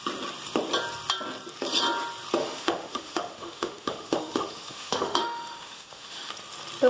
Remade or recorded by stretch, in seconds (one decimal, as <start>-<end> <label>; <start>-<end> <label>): 0.0-2.4 recorded; 2.4-6.3 remade; 6.3-6.9 recorded